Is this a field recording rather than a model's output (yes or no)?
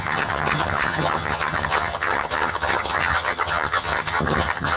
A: no